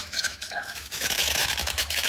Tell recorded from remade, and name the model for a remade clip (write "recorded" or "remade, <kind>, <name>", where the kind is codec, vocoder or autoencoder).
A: remade, autoencoder, DAC-VAE